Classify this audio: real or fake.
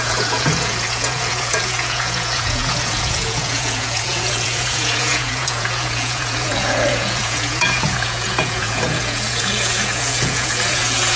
fake